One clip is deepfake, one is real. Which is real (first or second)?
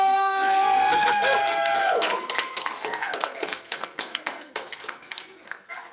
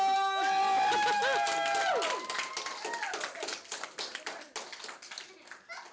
second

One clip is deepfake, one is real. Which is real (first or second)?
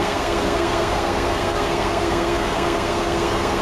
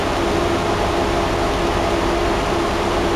second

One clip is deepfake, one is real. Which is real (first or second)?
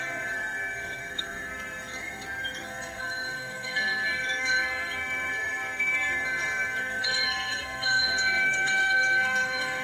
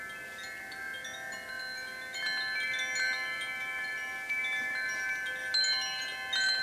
second